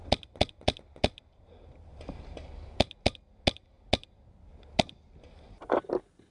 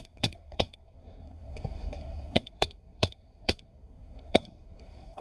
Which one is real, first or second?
first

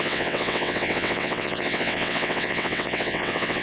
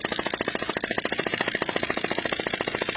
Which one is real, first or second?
second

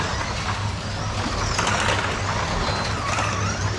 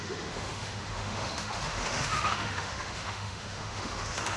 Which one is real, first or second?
first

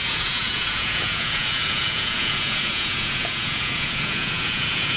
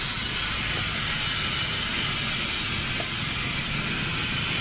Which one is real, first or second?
second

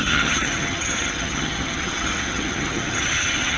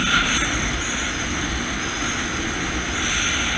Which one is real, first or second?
second